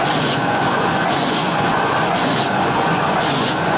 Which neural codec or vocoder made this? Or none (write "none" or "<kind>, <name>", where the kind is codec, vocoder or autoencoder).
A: vocoder, Vocos